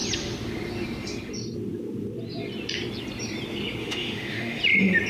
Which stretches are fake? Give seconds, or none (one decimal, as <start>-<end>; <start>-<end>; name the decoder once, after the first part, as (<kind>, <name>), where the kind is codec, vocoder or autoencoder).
3.8-4.6 (autoencoder, DAC-VAE)